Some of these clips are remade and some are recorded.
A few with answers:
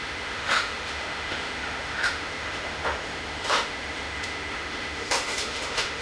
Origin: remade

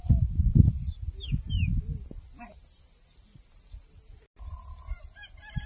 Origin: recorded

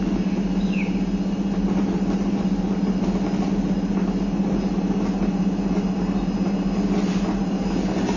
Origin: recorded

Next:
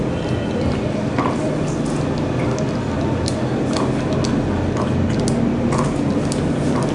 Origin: recorded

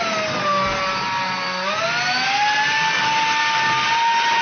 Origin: recorded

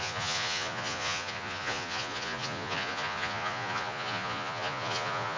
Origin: remade